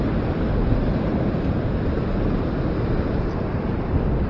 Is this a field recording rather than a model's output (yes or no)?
yes